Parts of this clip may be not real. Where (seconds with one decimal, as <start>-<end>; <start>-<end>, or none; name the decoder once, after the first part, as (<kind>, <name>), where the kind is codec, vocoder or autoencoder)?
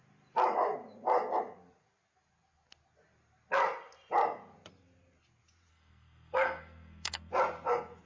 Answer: 5.7-7.3 (codec, SNAC)